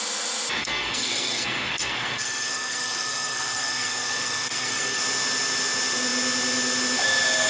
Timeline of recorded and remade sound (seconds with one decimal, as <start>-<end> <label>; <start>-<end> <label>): 0.0-0.6 recorded; 0.6-5.0 remade; 5.0-7.5 recorded